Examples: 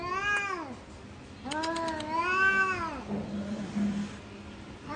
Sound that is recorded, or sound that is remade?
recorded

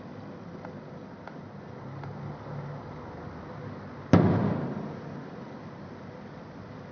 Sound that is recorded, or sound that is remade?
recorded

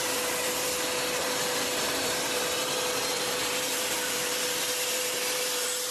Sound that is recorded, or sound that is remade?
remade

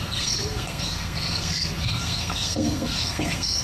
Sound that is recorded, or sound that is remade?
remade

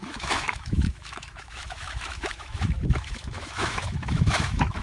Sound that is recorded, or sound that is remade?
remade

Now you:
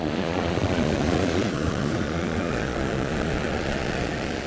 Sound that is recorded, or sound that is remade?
remade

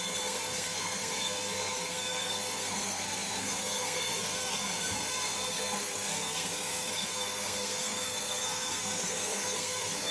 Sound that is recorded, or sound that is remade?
remade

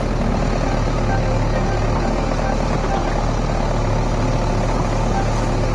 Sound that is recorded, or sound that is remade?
recorded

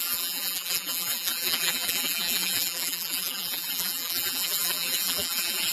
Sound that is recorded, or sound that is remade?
remade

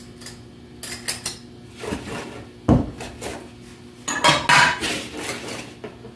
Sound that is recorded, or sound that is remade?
recorded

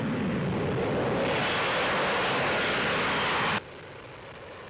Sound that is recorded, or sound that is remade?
recorded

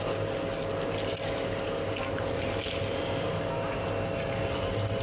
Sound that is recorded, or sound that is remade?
recorded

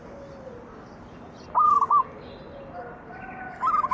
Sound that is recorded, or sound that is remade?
recorded